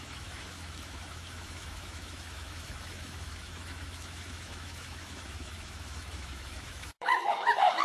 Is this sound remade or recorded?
remade